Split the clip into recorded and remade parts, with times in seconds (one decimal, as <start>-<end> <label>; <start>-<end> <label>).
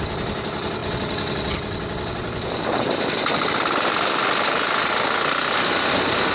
0.0-6.3 recorded